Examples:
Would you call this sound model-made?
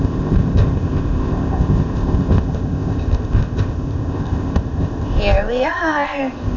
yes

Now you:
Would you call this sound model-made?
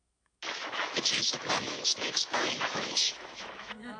yes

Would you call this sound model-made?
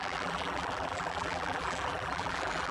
yes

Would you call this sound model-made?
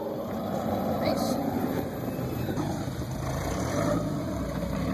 yes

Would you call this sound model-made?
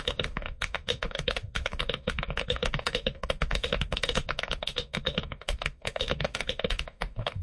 yes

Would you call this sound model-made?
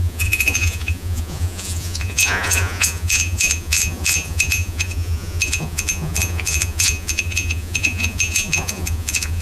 yes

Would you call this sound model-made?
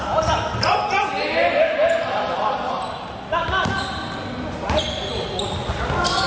no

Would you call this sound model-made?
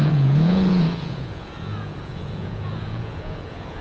yes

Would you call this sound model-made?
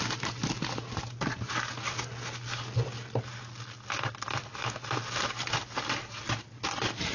no